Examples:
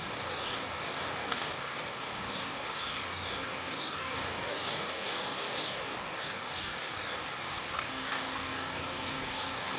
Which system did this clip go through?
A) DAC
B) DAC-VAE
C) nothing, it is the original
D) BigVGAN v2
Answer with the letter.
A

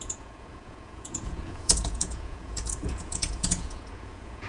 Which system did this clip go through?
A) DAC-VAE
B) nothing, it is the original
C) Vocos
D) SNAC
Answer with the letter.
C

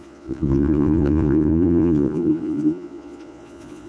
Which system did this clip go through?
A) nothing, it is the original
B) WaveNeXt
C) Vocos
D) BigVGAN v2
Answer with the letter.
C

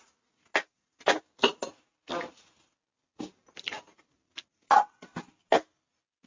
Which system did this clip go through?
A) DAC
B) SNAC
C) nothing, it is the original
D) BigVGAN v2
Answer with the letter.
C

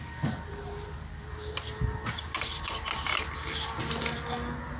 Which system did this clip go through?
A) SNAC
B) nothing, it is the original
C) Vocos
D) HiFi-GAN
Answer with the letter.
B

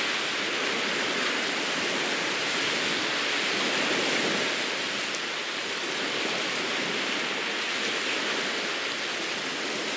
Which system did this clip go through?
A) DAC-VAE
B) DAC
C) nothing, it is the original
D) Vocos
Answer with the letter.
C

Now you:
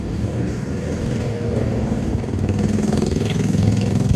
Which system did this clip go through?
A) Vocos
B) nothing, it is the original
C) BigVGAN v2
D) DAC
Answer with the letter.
D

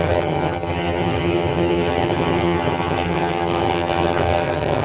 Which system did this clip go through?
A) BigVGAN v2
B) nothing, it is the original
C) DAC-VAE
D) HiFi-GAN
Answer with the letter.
D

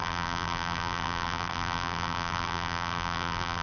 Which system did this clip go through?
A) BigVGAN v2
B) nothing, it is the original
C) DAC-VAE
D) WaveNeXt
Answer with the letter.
A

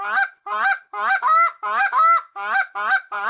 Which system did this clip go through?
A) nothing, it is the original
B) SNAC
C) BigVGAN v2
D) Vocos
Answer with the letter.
A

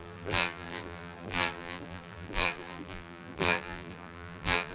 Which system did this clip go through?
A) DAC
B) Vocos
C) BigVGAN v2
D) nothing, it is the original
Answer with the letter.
C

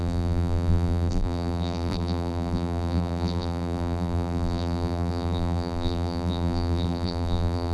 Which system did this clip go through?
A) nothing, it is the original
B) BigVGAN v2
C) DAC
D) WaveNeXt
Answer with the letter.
B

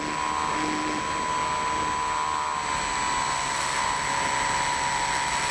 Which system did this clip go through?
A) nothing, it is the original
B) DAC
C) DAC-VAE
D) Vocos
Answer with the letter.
A